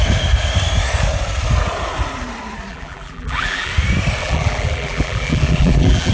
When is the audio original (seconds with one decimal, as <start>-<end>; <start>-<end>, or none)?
0.0-2.7; 3.7-4.2